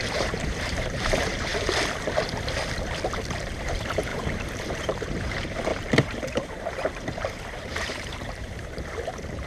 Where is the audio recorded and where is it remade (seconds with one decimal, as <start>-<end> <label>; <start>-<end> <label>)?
0.0-1.5 remade; 1.5-3.6 recorded; 3.6-9.5 remade